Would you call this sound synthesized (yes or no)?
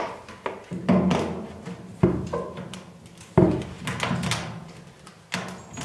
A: no